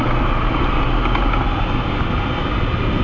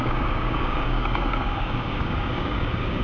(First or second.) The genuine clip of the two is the first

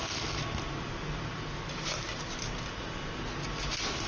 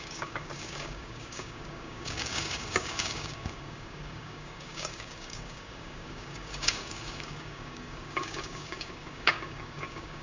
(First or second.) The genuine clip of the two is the first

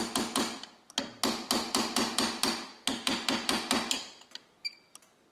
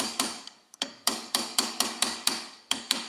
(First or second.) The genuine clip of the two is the first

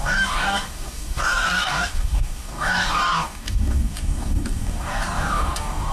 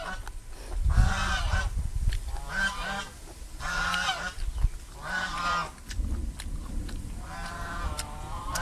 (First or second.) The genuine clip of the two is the second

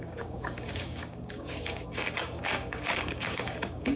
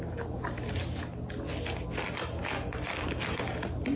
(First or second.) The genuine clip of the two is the second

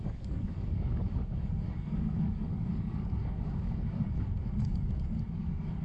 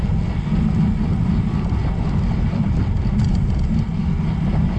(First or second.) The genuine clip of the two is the second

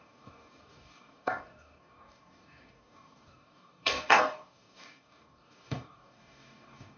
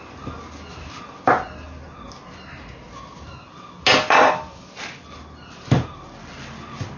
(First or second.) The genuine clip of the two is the second